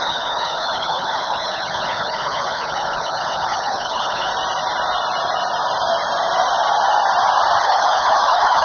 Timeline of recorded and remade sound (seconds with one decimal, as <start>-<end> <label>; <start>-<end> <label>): 0.0-4.3 remade; 4.3-7.6 recorded; 7.6-8.6 remade